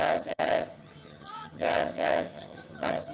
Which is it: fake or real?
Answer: fake